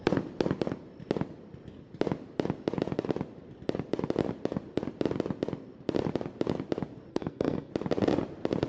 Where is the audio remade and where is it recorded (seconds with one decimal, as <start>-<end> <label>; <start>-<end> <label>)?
0.0-7.1 recorded; 7.1-7.7 remade; 7.7-8.7 recorded